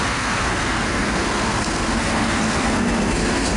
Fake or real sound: fake